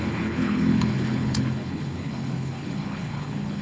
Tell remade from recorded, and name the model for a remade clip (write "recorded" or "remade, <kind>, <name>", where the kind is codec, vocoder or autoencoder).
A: remade, codec, HILCodec